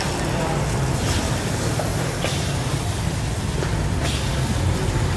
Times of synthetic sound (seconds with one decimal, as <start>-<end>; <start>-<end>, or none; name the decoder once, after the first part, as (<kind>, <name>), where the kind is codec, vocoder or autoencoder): none